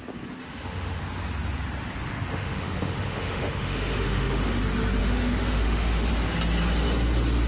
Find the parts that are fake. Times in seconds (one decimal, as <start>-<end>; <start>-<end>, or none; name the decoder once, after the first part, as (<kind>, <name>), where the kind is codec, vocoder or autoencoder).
0.4-1.0 (autoencoder, DAC-VAE); 2.3-4.6; 5.0-6.1

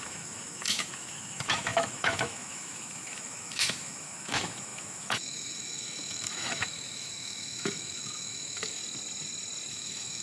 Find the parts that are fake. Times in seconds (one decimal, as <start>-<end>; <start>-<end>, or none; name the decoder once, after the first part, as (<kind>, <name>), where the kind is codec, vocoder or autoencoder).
0.0-8.8 (autoencoder, DAC-VAE); 9.7-10.2

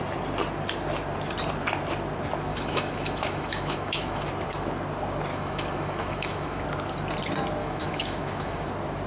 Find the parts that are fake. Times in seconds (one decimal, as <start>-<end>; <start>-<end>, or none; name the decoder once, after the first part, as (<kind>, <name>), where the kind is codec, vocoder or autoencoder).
2.5-4.3 (autoencoder, DAC-VAE); 5.3-6.6; 7.6-8.7